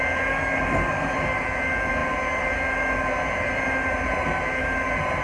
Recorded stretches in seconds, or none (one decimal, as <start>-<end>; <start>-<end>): 0.0-5.2